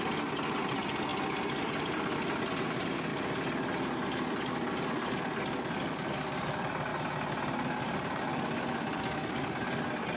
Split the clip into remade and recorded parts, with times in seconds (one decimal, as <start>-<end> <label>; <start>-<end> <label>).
0.0-10.2 recorded